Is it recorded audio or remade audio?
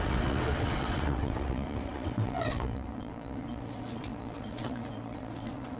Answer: remade